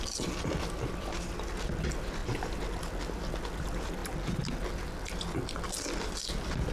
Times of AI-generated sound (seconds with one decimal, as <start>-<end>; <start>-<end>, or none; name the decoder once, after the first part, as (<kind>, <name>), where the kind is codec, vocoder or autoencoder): none